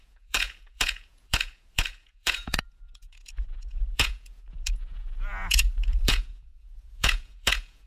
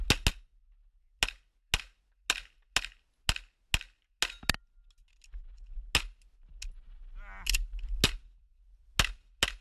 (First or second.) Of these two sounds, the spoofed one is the first